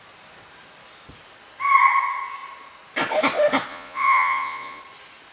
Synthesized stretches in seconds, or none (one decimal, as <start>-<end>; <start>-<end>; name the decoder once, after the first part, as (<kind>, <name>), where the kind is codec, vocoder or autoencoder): 3.7-4.8 (vocoder, Vocos)